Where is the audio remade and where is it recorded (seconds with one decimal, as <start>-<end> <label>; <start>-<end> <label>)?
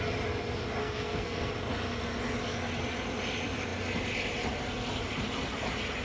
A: 0.0-0.8 recorded; 0.8-1.5 remade; 1.5-6.0 recorded